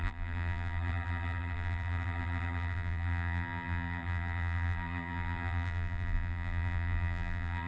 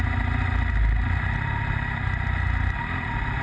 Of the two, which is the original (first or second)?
second